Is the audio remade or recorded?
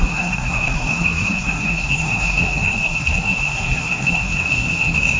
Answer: remade